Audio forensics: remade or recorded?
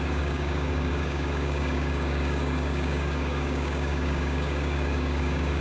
remade